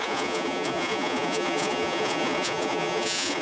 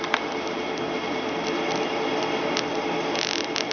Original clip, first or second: second